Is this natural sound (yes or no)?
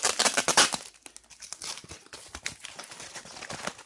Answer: yes